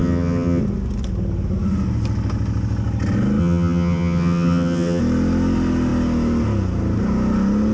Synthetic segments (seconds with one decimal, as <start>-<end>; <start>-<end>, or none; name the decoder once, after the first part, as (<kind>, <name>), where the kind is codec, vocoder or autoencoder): 0.0-0.6 (vocoder, HiFi-GAN); 3.4-5.0